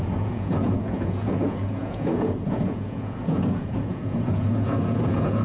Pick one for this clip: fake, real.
fake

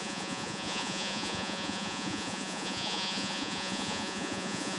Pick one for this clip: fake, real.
fake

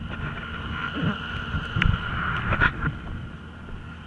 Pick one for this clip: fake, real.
real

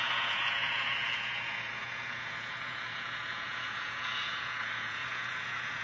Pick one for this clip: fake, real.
fake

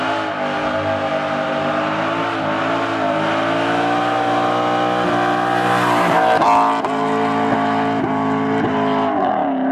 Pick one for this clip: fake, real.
real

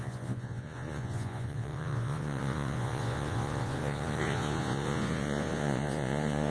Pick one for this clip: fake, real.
fake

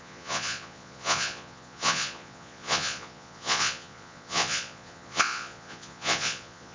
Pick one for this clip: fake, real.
fake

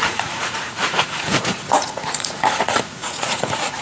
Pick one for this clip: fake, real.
fake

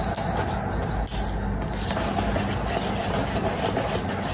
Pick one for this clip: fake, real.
real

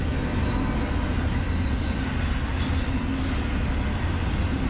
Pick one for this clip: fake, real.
real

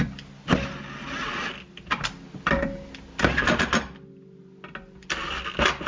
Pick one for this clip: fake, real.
real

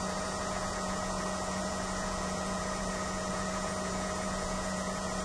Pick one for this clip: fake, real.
fake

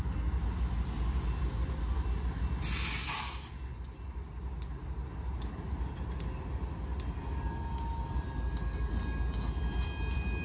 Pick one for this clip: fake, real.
real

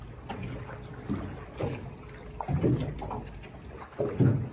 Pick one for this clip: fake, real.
real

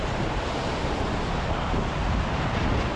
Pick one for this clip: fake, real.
real